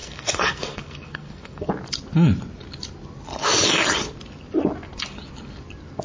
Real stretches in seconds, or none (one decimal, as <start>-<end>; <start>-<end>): 1.7-6.0